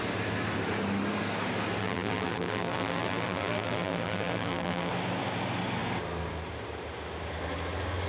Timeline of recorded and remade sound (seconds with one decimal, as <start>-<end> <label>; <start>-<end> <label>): 0.0-1.8 recorded; 1.8-4.9 remade; 4.9-8.1 recorded

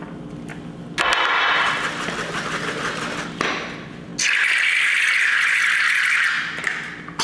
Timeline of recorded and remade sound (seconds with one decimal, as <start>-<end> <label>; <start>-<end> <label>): 0.0-0.5 remade; 0.5-3.4 recorded; 3.4-4.1 remade; 4.1-7.2 recorded

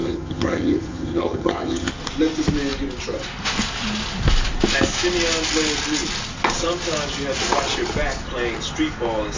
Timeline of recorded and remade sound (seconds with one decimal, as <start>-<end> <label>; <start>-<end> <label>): 0.0-1.9 remade; 1.9-9.4 recorded